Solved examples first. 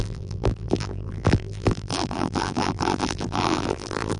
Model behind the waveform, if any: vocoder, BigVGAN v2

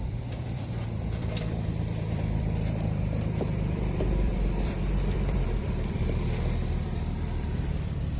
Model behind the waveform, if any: vocoder, BigVGAN v2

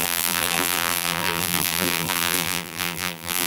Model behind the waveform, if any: vocoder, BigVGAN v2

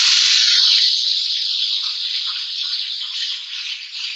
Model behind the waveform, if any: none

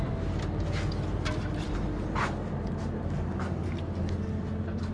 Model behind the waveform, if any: none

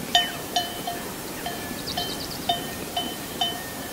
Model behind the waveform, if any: vocoder, BigVGAN v2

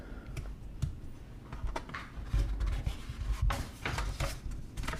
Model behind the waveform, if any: none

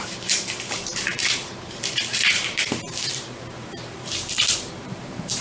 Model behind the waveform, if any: vocoder, BigVGAN v2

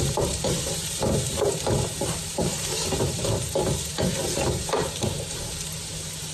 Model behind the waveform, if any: vocoder, BigVGAN v2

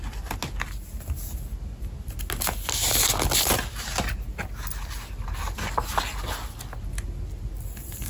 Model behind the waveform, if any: none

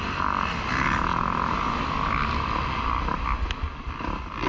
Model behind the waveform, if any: none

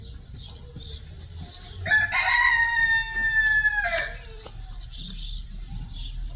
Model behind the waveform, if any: none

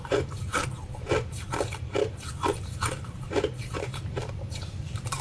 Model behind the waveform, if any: vocoder, BigVGAN v2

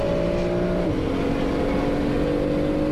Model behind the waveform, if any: none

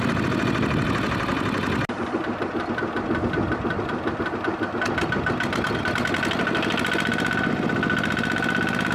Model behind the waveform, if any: none